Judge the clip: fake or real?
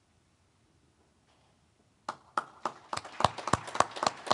real